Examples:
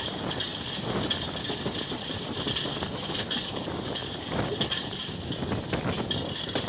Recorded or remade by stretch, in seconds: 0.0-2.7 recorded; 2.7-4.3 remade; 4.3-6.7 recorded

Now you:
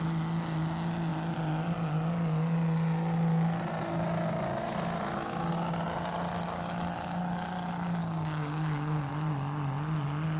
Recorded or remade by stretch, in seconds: 0.0-8.0 recorded; 8.0-9.1 remade; 9.1-10.4 recorded

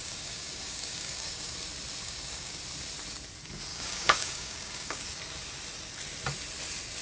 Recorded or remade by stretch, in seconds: 0.0-1.5 remade; 1.5-2.0 recorded; 2.0-2.6 remade; 2.6-3.7 recorded; 3.7-5.0 remade; 5.0-7.0 recorded

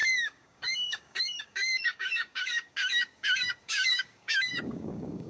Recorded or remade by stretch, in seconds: 0.0-5.3 remade

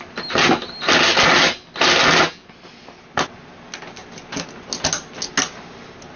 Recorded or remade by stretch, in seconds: 0.0-6.2 recorded

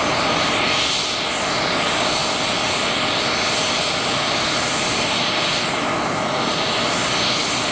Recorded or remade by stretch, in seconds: 0.0-7.7 recorded

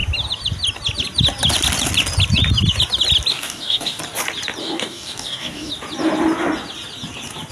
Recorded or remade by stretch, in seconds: 0.0-3.3 recorded; 3.3-4.0 remade; 4.0-4.6 recorded; 4.6-5.7 remade; 5.7-7.5 recorded

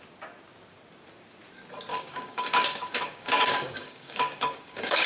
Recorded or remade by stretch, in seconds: 0.0-1.9 recorded; 1.9-5.1 remade